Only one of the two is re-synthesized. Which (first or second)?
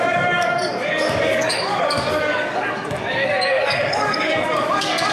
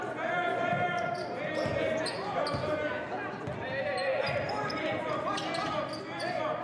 first